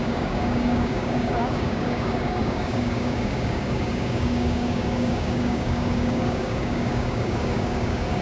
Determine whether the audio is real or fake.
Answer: fake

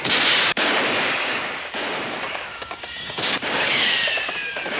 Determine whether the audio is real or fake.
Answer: fake